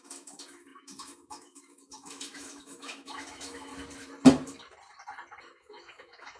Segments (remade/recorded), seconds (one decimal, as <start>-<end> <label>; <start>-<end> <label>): 0.0-3.7 remade; 3.7-5.4 recorded; 5.4-6.4 remade